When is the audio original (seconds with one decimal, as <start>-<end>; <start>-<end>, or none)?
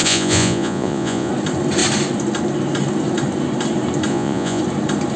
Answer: 1.3-4.1; 4.6-5.2